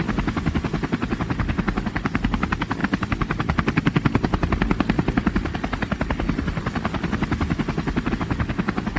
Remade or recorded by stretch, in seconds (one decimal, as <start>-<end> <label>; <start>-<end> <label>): 0.0-2.8 recorded; 2.8-8.1 remade; 8.1-9.0 recorded